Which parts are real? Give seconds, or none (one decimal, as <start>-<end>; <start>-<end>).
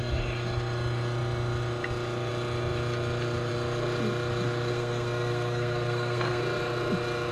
0.0-4.7; 6.4-7.3